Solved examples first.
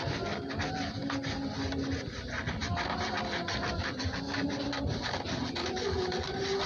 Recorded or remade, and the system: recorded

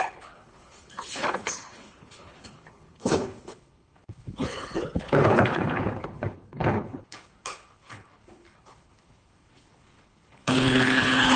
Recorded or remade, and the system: remade, codec, HILCodec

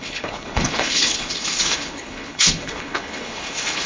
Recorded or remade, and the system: remade, codec, HILCodec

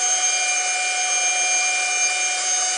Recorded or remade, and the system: recorded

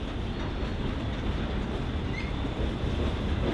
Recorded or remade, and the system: recorded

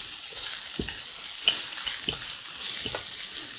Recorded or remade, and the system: recorded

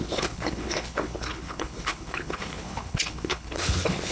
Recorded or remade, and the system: remade, codec, HILCodec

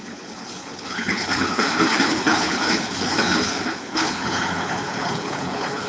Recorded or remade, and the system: remade, codec, HILCodec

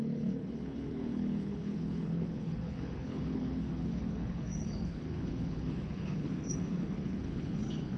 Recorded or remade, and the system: remade, codec, HILCodec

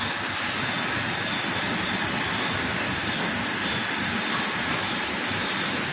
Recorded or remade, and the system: recorded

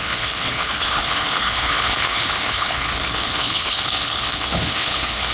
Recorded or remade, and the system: remade, codec, HILCodec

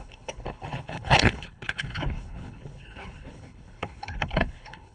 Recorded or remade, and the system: remade, codec, HILCodec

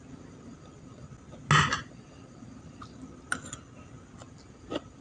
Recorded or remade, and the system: recorded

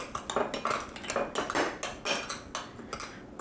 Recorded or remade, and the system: recorded